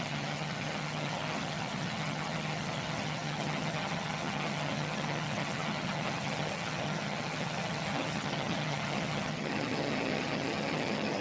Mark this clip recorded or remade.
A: remade